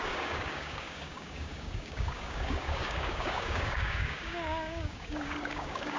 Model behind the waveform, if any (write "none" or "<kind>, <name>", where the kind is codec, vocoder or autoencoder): codec, DAC